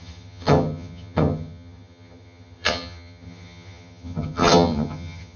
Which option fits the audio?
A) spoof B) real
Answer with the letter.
A